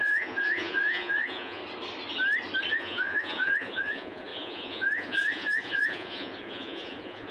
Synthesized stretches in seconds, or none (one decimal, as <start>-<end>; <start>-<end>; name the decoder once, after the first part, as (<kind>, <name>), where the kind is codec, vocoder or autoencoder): 0.0-1.6 (vocoder, Vocos); 2.7-7.3